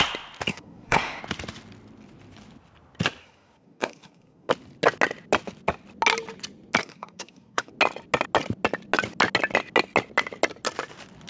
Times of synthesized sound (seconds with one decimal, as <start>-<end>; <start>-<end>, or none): 0.5-1.2; 3.2-4.5; 6.8-7.7